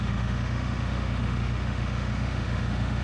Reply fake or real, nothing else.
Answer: fake